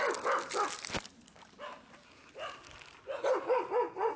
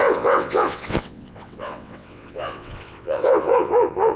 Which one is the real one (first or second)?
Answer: first